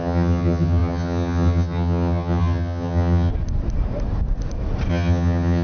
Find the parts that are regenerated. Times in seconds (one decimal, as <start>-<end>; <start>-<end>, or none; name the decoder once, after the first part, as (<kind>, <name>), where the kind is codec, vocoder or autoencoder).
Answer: 0.0-3.3 (vocoder, HiFi-GAN); 4.9-5.6